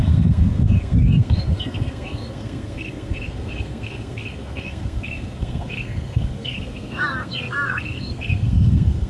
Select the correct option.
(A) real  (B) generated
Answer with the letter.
B